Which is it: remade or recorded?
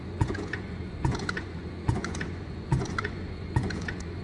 remade